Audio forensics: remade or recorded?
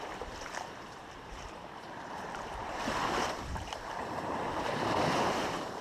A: remade